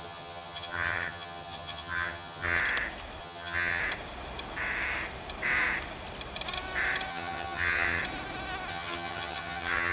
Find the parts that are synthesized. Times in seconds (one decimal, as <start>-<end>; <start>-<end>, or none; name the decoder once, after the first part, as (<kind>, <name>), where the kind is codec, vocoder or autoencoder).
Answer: 0.0-2.6 (vocoder, HiFi-GAN); 3.2-3.8; 7.1-8.0; 8.7-9.9